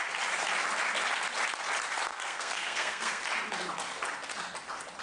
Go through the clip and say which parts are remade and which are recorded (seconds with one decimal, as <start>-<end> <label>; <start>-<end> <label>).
0.0-2.1 recorded; 2.1-3.2 remade; 3.2-5.0 recorded